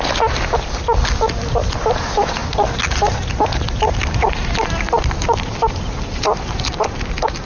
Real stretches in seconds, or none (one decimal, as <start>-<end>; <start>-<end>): 0.0-7.5